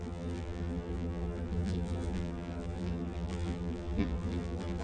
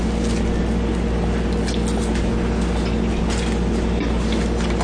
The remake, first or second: first